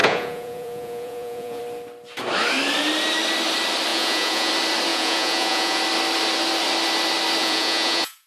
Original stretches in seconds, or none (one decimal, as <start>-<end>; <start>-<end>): 1.6-3.9; 4.5-4.9; 5.8-7.4